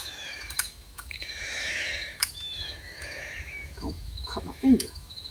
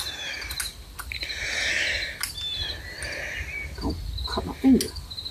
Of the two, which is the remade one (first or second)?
first